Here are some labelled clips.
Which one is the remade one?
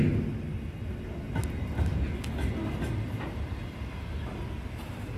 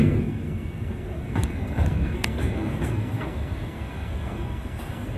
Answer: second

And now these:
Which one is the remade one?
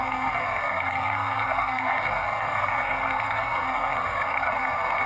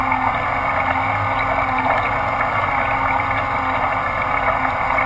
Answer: first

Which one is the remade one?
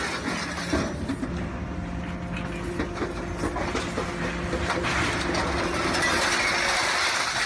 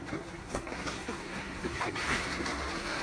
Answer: second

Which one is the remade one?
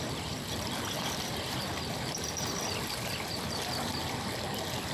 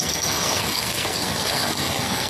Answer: second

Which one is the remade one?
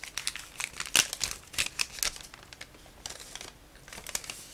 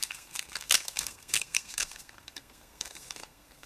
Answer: second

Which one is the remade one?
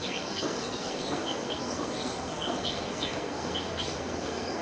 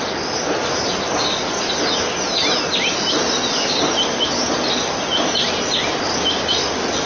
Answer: first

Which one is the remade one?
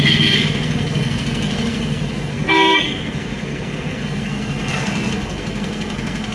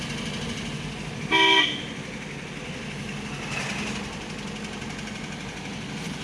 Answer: first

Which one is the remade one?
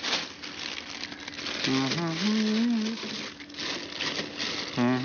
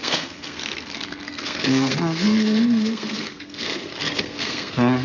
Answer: second